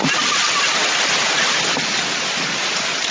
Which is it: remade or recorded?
recorded